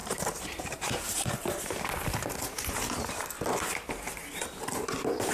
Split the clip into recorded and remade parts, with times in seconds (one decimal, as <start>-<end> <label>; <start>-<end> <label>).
0.0-2.4 remade; 2.4-5.3 recorded